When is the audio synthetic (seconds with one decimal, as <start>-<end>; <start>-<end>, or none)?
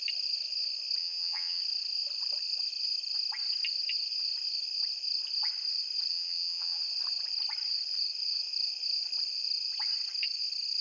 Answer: 1.0-1.6; 6.1-6.8